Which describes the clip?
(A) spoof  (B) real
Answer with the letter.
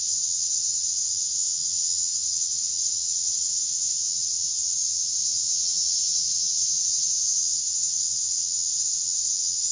A